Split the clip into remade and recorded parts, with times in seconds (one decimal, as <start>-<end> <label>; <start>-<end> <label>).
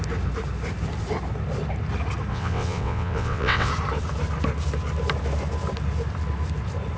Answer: 0.0-2.3 recorded; 2.3-3.7 remade; 3.7-7.0 recorded